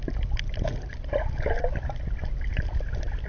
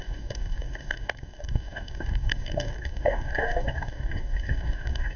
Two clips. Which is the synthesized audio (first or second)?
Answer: second